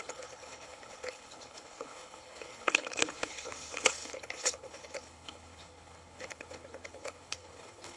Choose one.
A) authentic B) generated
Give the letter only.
B